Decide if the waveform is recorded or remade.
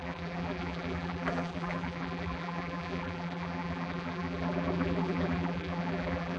remade